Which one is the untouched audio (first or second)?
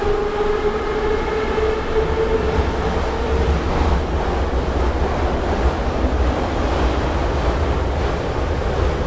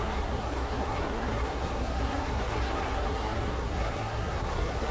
first